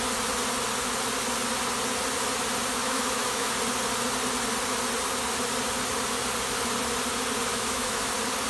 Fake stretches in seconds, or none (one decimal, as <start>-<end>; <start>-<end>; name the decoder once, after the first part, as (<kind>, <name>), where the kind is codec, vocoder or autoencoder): 2.7-3.5 (autoencoder, DAC-VAE); 7.5-8.1